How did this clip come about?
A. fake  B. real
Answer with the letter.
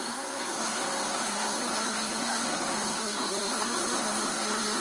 A